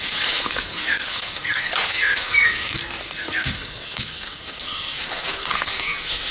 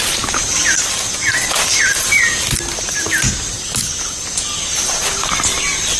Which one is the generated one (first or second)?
first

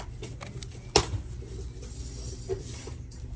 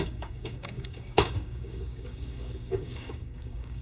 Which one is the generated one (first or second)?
second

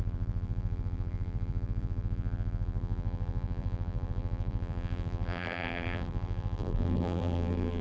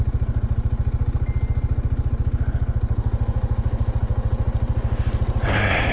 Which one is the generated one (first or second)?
first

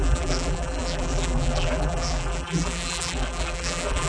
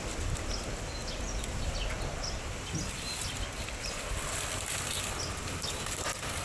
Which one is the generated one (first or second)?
first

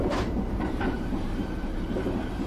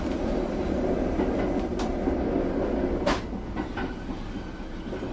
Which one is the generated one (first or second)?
first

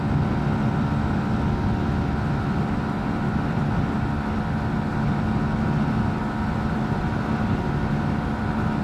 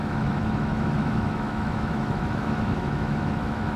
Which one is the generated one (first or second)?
second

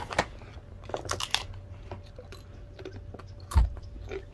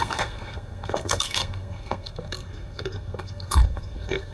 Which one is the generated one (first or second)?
second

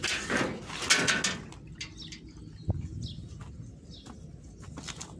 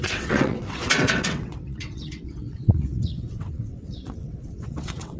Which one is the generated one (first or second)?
second